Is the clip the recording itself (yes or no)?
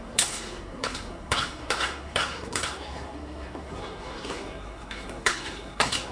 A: no